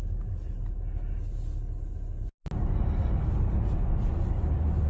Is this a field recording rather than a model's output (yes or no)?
yes